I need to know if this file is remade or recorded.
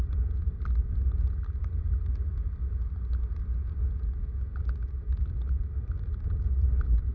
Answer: recorded